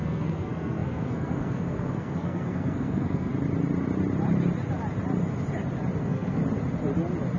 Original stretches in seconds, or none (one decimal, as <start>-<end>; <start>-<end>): 3.3-6.0; 6.4-7.4